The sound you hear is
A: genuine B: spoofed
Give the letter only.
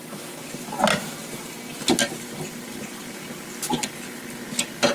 A